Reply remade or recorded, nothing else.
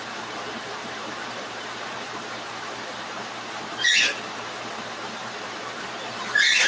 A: remade